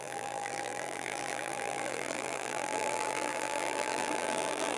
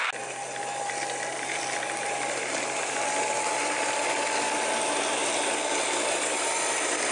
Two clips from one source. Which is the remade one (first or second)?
first